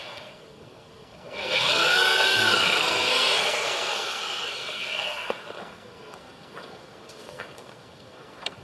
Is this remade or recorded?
remade